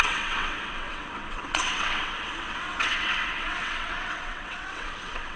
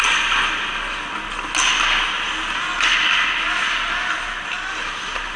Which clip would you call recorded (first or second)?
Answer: second